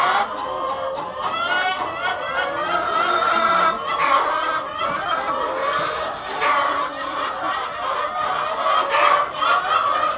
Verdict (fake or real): real